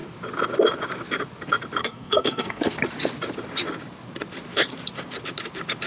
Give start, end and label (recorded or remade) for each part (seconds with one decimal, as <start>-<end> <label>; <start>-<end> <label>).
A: 0.0-1.8 recorded; 1.8-2.7 remade; 2.7-5.9 recorded